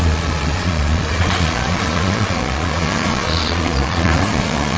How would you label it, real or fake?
fake